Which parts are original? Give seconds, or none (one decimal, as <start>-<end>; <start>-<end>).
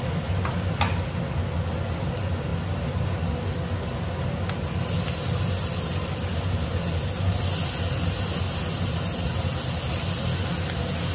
0.0-11.1